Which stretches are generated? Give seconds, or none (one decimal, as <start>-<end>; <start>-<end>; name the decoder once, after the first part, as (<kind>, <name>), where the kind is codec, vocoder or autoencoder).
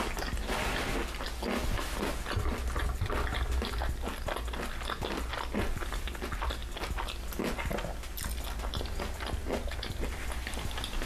none